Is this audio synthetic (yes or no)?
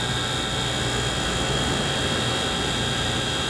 no